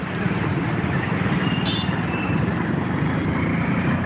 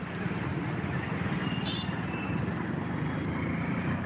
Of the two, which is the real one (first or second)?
second